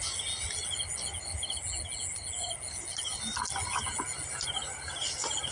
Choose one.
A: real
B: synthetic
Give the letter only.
A